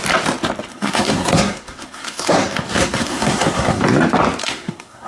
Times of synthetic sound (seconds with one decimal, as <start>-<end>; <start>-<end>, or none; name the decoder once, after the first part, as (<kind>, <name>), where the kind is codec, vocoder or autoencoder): 0.7-3.8 (codec, SNAC); 4.4-5.1

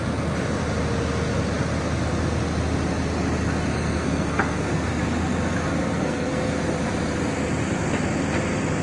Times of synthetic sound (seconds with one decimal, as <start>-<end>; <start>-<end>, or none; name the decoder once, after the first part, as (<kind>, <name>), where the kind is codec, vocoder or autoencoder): 3.7-4.9 (codec, SNAC); 5.8-6.5

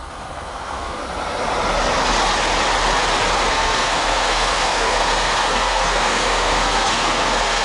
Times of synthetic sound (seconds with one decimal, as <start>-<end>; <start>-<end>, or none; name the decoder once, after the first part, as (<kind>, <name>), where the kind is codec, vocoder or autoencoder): 0.0-1.0 (codec, SNAC); 3.5-7.6

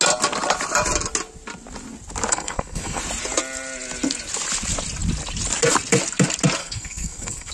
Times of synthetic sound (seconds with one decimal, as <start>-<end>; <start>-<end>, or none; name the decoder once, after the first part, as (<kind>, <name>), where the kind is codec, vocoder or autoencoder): 2.3-3.0 (codec, SNAC); 6.6-7.5